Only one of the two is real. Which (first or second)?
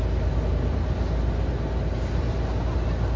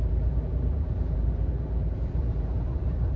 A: first